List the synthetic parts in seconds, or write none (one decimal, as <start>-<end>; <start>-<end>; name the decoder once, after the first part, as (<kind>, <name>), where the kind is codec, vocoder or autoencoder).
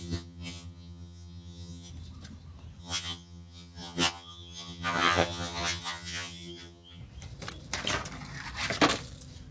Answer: 0.0-1.9 (vocoder, HiFi-GAN); 2.8-7.0